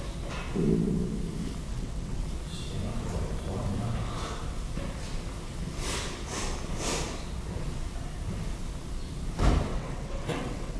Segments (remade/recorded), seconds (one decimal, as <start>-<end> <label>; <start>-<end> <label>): 0.0-1.7 recorded; 1.7-2.2 remade; 2.2-9.7 recorded; 9.7-10.8 remade